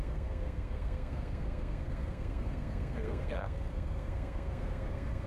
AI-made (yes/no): yes